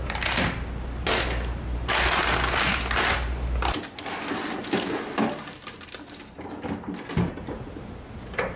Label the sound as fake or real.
real